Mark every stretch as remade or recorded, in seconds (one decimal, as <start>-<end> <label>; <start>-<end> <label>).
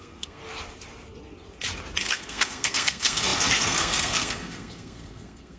0.0-0.4 remade; 0.4-2.0 recorded; 2.0-5.6 remade